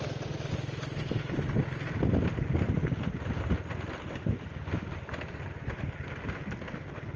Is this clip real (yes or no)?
yes